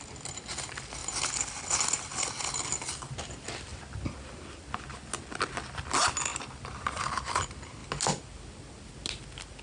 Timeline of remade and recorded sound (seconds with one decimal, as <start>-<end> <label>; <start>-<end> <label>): 0.0-9.6 recorded